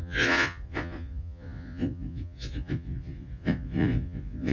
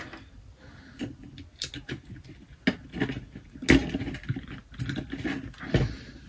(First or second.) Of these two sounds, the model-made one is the first